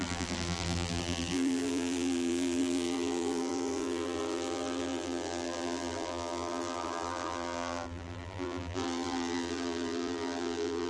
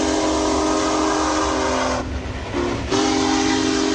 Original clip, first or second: second